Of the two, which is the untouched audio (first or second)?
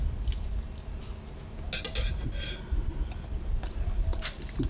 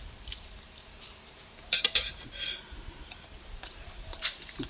first